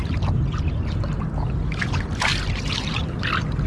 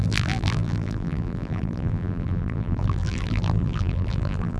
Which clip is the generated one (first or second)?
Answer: second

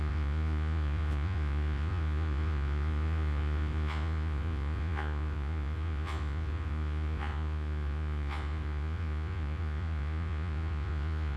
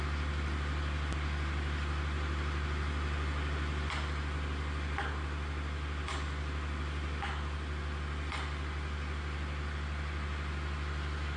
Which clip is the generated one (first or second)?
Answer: first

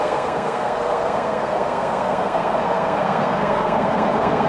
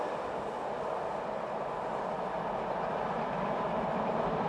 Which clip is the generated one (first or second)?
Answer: first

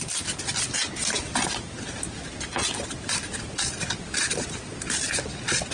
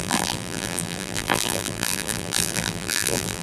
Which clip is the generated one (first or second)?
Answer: second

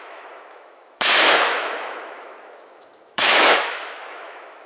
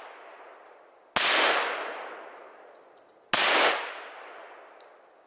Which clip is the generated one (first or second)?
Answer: first